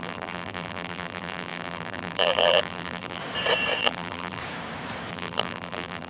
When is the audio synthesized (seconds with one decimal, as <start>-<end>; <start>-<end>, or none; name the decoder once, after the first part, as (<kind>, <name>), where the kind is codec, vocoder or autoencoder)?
0.0-3.2 (vocoder, BigVGAN v2); 3.8-4.4; 5.1-6.1